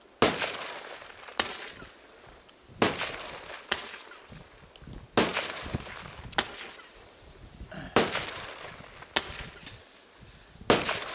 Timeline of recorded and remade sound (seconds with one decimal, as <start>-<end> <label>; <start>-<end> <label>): 0.0-11.1 recorded